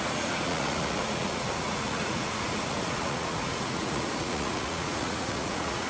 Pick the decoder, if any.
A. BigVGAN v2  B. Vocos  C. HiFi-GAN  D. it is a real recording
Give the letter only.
B